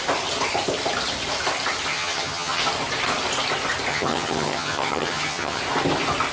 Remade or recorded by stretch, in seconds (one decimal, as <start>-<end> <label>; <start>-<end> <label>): 0.0-1.9 recorded; 1.9-2.6 remade; 2.6-3.9 recorded; 3.9-5.6 remade; 5.6-6.3 recorded